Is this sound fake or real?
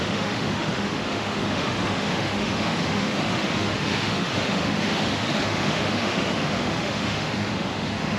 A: fake